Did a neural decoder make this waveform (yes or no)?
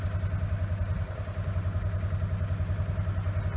no